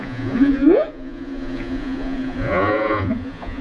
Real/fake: fake